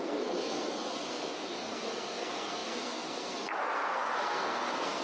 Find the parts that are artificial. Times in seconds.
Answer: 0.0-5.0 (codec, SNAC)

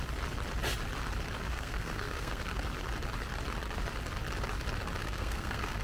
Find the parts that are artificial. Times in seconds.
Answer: 1.5-2.4 (codec, SNAC); 5.0-5.8

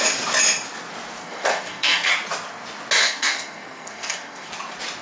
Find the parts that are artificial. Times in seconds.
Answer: 1.2-2.1 (codec, SNAC); 3.0-4.5

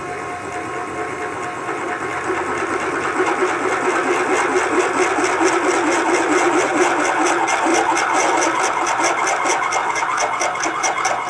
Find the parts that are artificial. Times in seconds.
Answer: none

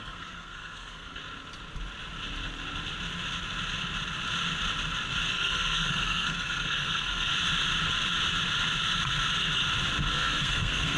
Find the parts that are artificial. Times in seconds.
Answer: 0.0-1.2 (codec, SNAC); 5.3-7.3; 10.1-11.0

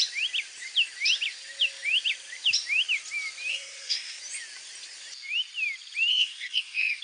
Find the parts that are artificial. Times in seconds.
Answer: 3.5-4.2 (codec, SNAC); 6.1-7.0

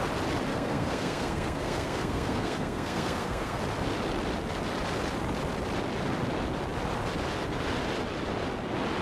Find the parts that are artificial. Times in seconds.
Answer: 0.5-3.6 (codec, SNAC)

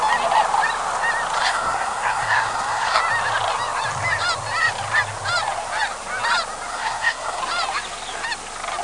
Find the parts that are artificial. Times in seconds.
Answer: 1.4-3.0 (codec, SNAC); 6.7-7.4